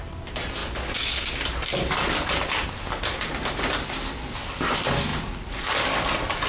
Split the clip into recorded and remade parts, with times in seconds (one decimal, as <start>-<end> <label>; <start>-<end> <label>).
0.0-6.5 recorded